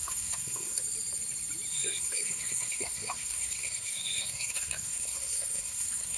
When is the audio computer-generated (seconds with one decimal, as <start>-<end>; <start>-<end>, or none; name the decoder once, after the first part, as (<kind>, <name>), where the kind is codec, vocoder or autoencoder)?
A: 0.0-0.8 (codec, SNAC); 1.7-6.2